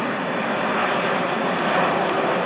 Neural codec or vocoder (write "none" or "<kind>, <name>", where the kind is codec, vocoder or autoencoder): none